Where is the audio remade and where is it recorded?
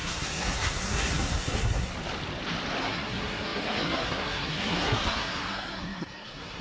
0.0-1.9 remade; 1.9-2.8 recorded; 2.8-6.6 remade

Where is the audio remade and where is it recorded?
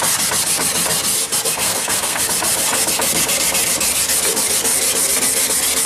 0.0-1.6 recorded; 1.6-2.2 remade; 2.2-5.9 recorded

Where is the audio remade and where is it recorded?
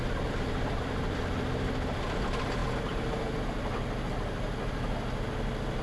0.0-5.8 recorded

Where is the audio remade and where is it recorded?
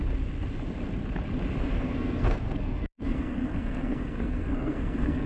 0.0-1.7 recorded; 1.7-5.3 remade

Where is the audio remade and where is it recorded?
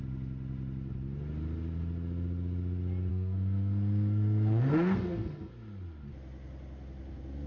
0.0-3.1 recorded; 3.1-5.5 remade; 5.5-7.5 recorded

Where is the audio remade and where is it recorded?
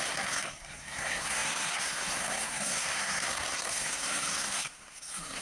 0.0-5.4 remade